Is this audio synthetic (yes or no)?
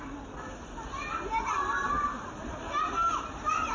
no